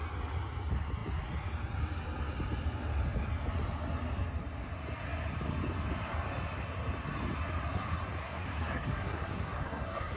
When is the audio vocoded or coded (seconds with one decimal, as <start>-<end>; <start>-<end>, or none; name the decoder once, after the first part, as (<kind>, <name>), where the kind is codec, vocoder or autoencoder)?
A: 8.2-10.2 (codec, SNAC)

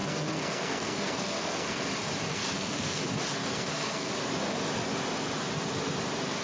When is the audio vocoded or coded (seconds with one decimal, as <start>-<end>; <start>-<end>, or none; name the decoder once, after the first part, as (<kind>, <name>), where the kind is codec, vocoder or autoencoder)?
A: 0.0-1.8 (codec, SNAC); 2.3-3.0; 3.4-4.1

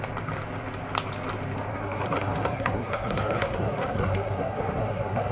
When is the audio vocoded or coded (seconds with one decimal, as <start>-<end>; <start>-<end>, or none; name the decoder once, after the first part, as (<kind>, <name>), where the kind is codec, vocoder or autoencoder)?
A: 1.7-5.3 (codec, SNAC)

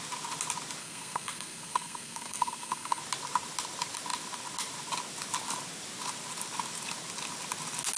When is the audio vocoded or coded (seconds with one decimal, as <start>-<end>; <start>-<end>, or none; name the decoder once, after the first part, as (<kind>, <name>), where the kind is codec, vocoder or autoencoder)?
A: 0.8-3.0 (codec, SNAC)

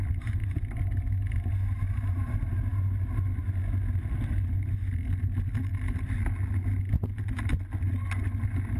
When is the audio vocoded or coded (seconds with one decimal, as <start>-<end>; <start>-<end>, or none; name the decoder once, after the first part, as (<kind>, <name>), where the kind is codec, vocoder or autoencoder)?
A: none

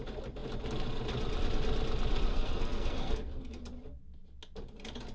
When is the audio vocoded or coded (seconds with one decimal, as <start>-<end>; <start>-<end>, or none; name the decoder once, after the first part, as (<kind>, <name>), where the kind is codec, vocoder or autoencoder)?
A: 2.3-3.6 (codec, SNAC)

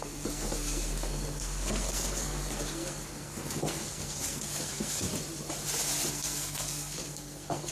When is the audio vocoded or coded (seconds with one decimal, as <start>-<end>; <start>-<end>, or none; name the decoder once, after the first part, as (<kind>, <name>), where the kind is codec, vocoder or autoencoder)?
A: 0.0-5.1 (codec, SNAC); 6.1-7.7

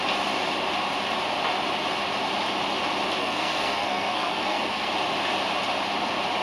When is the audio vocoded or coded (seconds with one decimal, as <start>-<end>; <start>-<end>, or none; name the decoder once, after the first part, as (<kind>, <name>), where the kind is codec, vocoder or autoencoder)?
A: 3.2-4.9 (codec, SNAC)